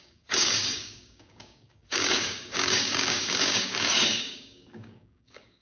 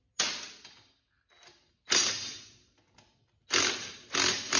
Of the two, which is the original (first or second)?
second